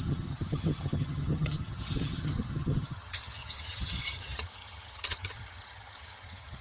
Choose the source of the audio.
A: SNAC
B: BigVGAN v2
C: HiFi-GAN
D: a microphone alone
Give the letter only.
C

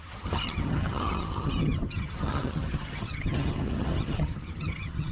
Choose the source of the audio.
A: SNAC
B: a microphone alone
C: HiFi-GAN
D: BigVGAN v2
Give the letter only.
C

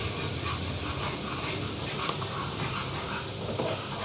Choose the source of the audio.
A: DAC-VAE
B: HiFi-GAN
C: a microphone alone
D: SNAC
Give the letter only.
C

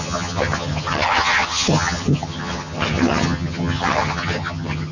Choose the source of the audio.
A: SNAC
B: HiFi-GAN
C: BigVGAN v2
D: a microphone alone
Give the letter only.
B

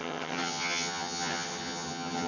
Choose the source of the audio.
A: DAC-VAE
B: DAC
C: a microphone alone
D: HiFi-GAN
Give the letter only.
D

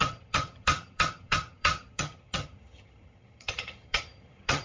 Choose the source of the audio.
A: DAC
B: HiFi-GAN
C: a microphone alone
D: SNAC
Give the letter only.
B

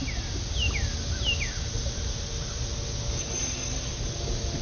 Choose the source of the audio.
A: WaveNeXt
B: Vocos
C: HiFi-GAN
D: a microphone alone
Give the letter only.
D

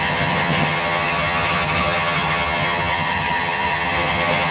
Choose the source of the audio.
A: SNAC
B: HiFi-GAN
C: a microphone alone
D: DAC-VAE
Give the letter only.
B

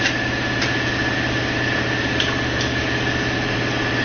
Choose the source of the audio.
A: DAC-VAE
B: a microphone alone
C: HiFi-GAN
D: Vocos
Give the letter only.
B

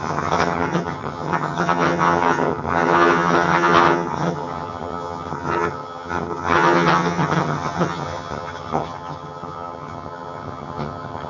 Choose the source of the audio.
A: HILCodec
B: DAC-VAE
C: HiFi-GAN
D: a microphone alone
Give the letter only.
C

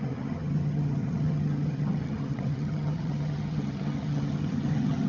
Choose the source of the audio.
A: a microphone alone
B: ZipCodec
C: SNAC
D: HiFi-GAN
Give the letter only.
D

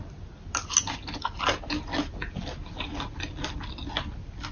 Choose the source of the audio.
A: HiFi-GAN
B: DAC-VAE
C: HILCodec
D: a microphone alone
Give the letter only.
D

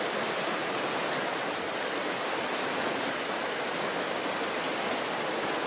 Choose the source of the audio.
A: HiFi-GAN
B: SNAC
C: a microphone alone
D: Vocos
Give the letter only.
C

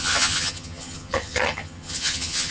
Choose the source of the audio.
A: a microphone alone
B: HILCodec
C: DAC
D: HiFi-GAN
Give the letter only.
D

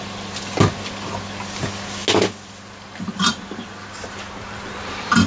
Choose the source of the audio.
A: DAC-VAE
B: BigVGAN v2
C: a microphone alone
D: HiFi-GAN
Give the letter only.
C